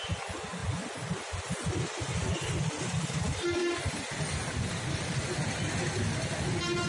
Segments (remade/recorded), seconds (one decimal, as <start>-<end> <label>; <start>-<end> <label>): 0.0-6.9 recorded